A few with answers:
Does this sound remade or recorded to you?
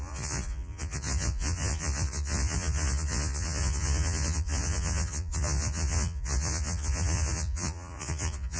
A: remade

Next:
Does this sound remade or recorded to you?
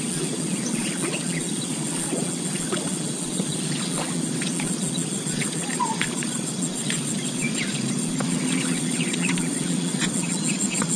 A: remade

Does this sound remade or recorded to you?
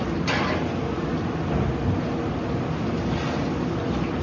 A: recorded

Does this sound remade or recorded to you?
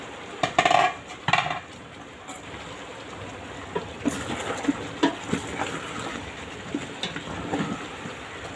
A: recorded